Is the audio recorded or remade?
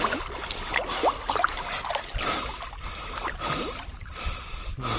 recorded